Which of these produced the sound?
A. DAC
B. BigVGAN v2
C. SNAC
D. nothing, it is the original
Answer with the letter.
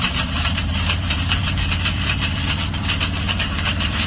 B